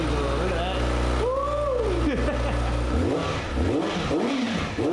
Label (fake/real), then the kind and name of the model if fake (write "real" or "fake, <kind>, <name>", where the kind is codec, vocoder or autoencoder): real